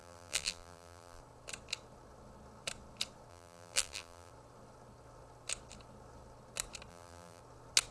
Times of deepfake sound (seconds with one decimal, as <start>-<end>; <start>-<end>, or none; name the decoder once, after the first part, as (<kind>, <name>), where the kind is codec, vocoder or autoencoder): 0.0-1.2 (vocoder, BigVGAN v2); 3.3-4.3; 6.9-7.4